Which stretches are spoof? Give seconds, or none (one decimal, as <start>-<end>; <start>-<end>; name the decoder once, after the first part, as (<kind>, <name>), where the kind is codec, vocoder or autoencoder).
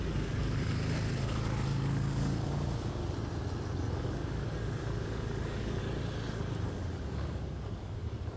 0.0-3.0 (codec, DAC); 3.9-5.8; 7.1-8.4